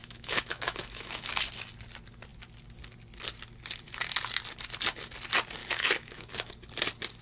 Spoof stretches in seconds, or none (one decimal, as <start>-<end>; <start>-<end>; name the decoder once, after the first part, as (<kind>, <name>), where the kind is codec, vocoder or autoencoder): 0.0-1.3 (autoencoder, DAC-VAE); 5.6-6.5